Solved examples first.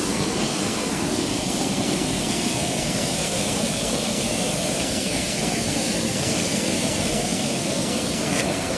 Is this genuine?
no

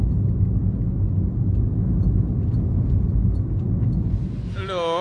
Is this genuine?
yes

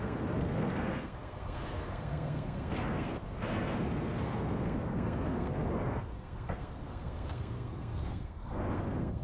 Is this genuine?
no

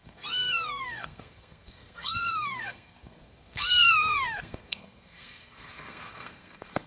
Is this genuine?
no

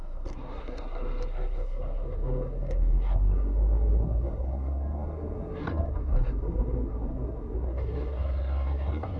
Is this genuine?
no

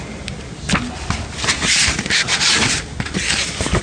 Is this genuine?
yes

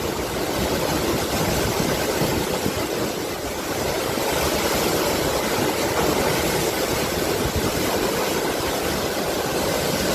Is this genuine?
yes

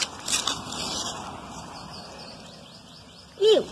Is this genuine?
yes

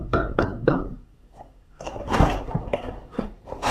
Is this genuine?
no